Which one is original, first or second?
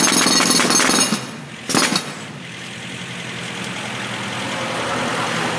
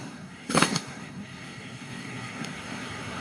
first